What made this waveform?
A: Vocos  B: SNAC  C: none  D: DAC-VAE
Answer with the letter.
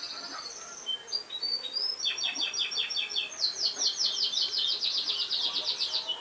C